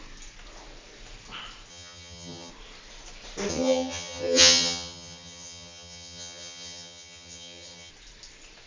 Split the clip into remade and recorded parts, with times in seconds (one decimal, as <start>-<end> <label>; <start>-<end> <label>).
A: 0.0-1.7 recorded; 1.7-2.5 remade; 2.5-3.5 recorded; 3.5-7.9 remade; 7.9-8.7 recorded